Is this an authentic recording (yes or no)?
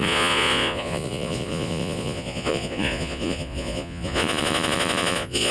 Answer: no